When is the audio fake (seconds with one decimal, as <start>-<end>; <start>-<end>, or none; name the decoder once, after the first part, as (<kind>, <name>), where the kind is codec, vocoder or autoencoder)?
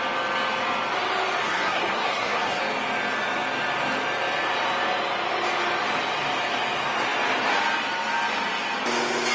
1.4-2.6 (codec, SNAC)